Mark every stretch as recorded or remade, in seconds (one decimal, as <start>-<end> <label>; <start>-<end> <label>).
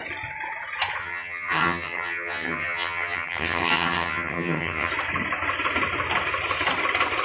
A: 0.0-1.0 recorded; 1.0-4.9 remade; 4.9-7.2 recorded